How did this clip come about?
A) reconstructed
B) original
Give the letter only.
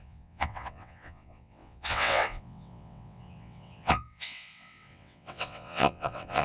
A